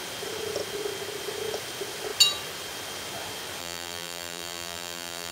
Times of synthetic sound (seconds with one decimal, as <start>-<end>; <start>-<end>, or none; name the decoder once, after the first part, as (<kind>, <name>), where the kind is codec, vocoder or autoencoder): 3.6-5.3 (vocoder, BigVGAN v2)